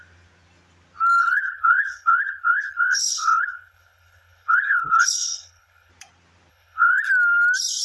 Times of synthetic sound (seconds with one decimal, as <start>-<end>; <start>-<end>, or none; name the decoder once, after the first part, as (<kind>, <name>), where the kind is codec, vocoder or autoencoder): 1.2-5.9 (codec, HILCodec); 6.5-7.1